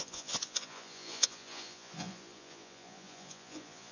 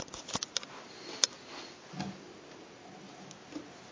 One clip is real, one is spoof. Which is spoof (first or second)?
first